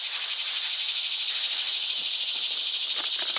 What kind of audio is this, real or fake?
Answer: real